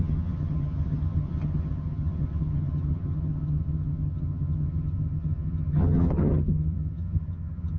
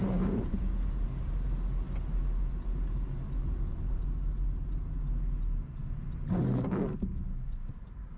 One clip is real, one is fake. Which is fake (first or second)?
first